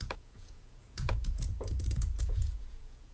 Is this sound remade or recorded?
remade